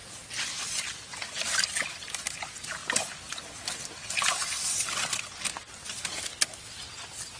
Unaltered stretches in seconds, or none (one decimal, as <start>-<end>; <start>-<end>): 0.0-7.4